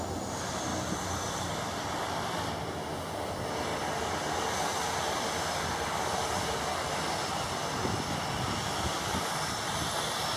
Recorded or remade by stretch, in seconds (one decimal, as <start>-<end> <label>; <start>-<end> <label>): 0.0-0.7 recorded; 0.7-2.5 remade; 2.5-10.4 recorded